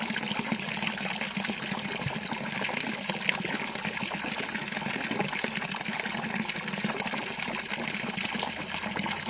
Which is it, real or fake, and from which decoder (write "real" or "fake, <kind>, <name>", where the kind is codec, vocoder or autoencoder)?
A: real